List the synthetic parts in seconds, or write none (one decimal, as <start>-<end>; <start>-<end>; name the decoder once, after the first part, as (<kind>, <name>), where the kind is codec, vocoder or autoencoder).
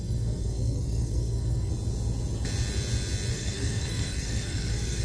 0.0-1.7 (codec, SNAC); 3.3-5.0